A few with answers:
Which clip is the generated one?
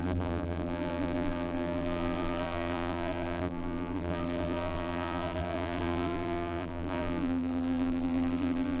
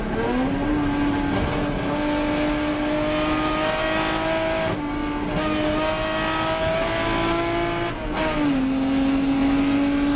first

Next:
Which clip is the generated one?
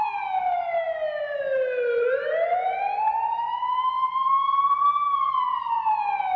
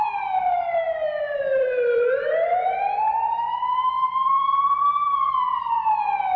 second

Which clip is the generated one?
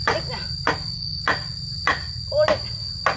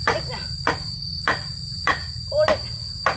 second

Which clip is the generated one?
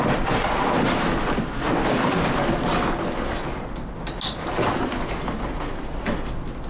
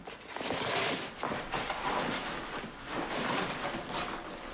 second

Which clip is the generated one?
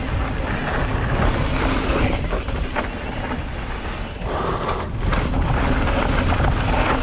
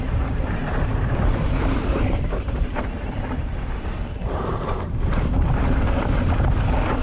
second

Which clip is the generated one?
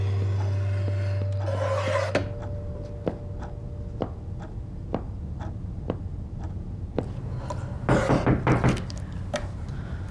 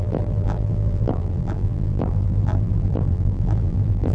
second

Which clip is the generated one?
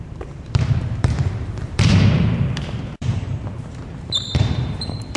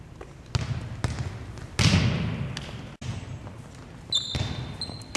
first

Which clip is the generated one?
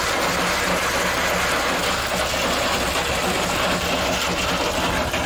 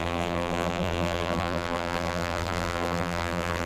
second